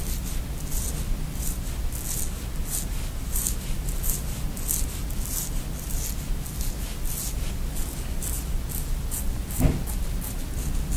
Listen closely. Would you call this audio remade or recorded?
recorded